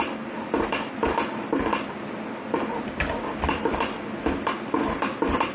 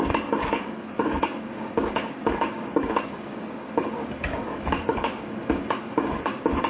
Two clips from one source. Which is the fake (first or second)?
second